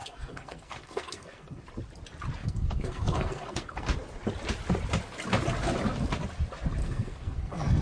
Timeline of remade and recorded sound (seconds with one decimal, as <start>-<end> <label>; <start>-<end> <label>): 0.0-1.6 remade; 1.6-2.4 recorded; 2.4-3.9 remade; 3.9-6.8 recorded; 6.8-7.8 remade